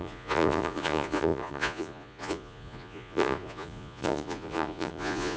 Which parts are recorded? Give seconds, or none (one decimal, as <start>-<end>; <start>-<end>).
none